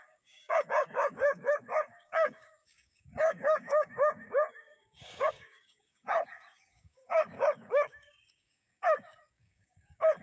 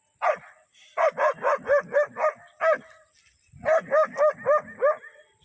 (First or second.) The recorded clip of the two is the second